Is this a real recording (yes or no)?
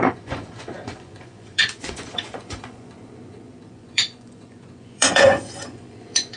no